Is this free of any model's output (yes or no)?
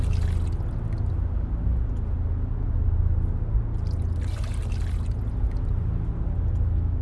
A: yes